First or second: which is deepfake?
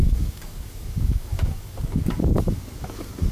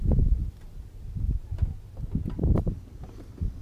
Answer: first